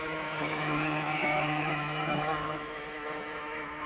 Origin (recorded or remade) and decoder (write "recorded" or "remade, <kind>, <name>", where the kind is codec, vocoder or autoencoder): remade, autoencoder, DAC-VAE